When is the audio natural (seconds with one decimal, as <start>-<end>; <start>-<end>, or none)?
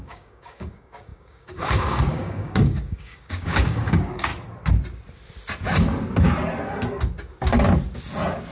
4.3-8.5